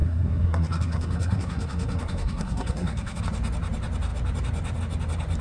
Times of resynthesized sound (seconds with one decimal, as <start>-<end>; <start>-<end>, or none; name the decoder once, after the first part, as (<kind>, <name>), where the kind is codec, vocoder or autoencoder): 0.0-3.2 (codec, SNAC)